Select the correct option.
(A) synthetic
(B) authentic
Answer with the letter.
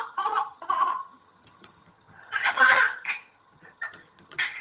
A